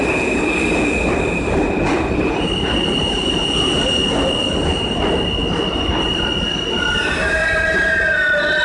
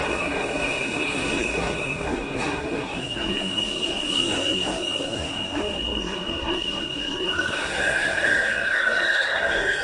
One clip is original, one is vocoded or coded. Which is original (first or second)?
first